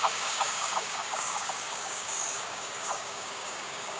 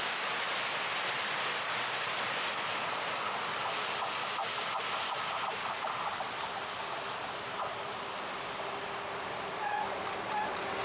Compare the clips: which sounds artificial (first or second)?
first